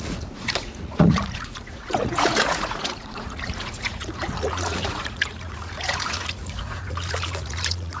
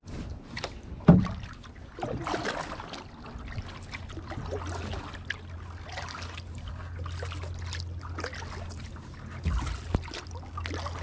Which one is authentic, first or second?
second